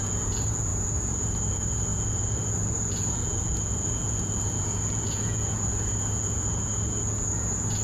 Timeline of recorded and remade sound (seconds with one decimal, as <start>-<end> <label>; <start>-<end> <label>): 0.0-7.8 remade